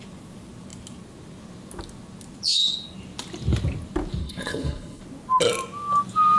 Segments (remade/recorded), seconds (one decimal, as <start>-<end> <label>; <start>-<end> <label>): 0.0-4.2 recorded; 4.2-5.0 remade; 5.0-6.4 recorded